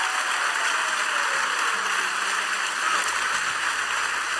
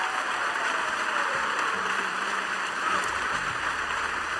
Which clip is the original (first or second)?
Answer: first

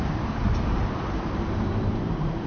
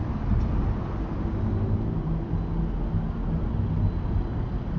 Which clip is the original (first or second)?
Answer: second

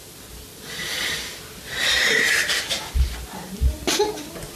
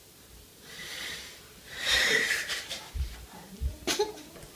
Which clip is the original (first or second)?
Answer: first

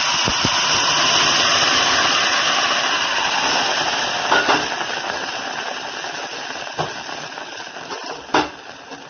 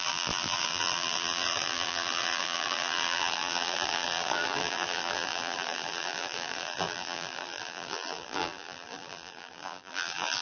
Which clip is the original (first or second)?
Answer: first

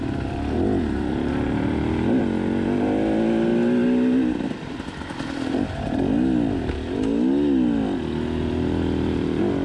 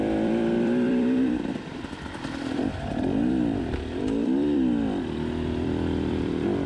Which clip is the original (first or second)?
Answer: first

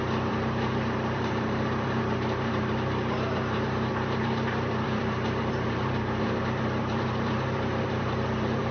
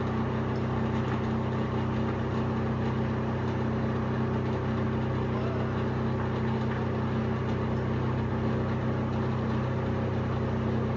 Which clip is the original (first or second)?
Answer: second